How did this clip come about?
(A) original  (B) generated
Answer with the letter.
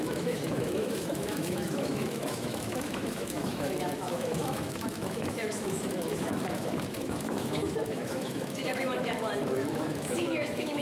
B